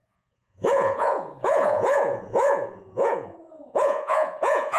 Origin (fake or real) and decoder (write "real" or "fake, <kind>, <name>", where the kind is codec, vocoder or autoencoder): fake, vocoder, Vocos